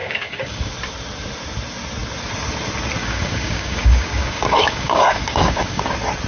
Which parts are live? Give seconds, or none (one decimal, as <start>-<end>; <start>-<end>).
0.7-3.0; 5.8-6.3